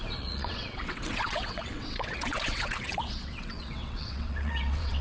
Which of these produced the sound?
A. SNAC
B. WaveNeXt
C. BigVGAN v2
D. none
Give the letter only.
B